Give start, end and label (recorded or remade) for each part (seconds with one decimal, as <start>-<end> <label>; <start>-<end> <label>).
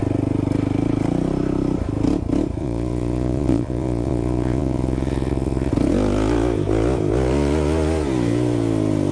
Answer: 0.0-2.6 recorded; 2.6-5.7 remade; 5.7-9.1 recorded